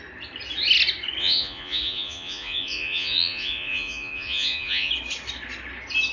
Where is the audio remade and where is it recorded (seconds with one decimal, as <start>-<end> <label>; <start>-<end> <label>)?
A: 0.0-1.2 recorded; 1.2-4.9 remade; 4.9-6.1 recorded